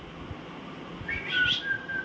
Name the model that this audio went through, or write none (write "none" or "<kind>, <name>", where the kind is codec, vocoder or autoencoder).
none